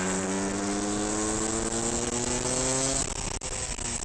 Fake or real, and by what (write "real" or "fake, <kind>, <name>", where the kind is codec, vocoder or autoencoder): real